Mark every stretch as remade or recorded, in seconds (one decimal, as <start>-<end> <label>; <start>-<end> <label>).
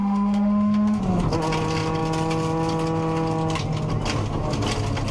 0.0-1.0 remade; 1.0-5.1 recorded